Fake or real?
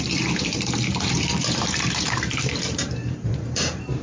fake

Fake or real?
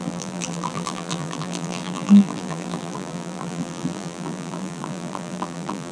fake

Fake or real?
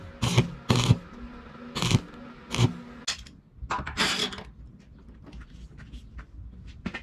real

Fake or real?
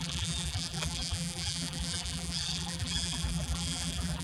fake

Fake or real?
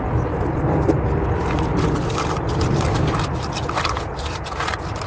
fake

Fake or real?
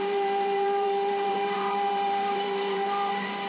fake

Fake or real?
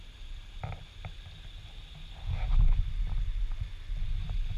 real